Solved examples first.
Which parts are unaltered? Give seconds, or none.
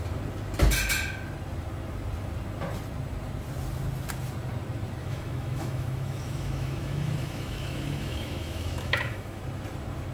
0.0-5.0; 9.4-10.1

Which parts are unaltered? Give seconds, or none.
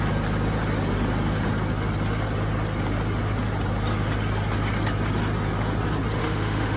0.0-6.2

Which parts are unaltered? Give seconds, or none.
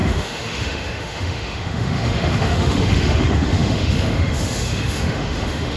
none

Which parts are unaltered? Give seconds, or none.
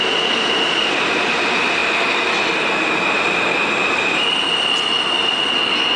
0.0-6.0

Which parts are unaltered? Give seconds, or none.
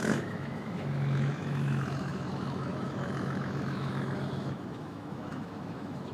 none